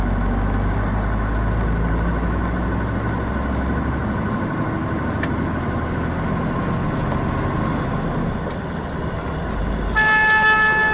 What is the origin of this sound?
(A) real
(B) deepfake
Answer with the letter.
A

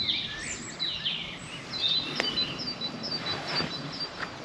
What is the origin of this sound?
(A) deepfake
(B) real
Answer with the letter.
B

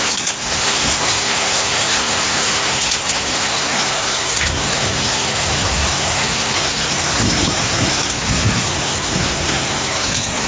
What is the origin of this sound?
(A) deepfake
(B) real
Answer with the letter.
A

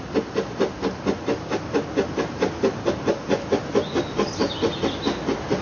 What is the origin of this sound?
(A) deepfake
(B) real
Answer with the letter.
B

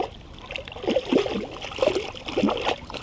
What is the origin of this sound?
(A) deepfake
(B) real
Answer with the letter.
B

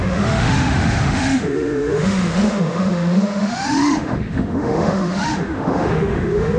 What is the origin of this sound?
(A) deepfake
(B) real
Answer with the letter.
A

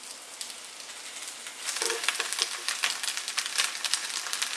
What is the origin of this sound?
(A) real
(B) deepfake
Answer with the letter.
A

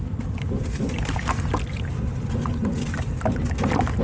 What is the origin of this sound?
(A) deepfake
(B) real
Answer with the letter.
B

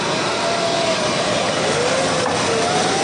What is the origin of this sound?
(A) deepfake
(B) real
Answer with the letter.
B